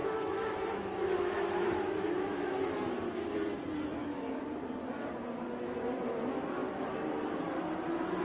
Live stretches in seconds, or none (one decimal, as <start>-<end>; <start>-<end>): 2.9-4.0; 4.6-8.2